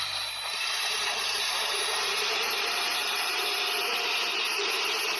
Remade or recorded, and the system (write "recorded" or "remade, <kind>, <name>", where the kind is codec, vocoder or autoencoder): remade, vocoder, BigVGAN v2